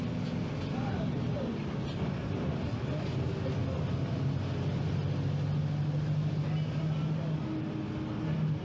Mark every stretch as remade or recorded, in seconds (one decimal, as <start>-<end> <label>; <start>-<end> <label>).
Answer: 0.0-8.6 recorded